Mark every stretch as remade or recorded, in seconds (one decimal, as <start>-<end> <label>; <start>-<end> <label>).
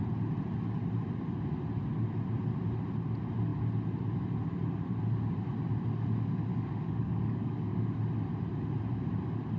0.0-6.5 recorded; 6.5-8.0 remade; 8.0-9.6 recorded